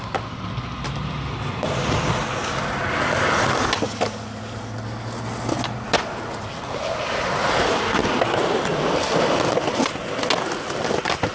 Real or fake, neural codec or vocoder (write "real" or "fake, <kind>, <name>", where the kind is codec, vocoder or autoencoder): real